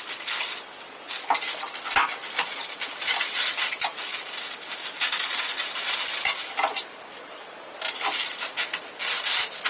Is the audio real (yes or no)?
yes